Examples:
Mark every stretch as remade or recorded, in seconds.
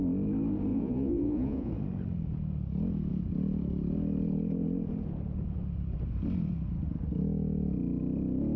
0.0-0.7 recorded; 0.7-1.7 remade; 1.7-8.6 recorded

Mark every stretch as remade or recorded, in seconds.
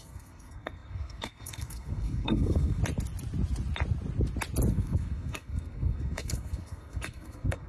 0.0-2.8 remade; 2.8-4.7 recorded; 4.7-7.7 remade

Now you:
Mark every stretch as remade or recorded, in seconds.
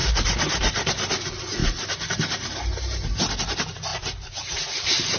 0.0-0.9 remade; 0.9-1.6 recorded; 1.6-3.3 remade; 3.3-3.9 recorded; 3.9-5.2 remade